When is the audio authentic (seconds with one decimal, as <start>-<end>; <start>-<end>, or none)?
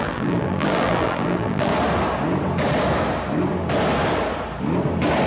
1.7-5.3